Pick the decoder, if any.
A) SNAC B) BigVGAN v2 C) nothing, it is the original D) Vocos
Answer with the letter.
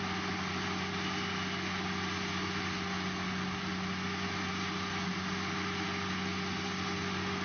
C